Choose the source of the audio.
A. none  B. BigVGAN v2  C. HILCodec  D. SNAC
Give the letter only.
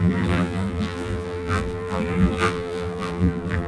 B